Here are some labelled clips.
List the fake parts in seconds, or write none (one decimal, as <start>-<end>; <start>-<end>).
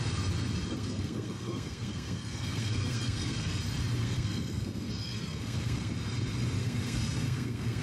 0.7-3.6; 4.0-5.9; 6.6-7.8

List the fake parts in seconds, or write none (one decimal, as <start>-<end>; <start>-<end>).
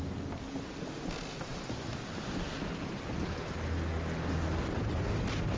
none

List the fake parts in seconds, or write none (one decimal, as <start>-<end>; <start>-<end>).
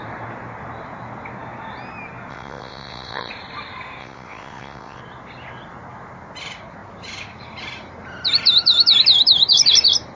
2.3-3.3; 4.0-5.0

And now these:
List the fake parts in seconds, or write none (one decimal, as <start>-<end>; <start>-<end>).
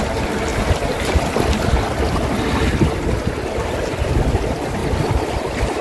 4.8-5.8